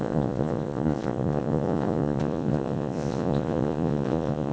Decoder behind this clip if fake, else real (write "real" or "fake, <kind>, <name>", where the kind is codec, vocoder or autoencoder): fake, vocoder, Vocos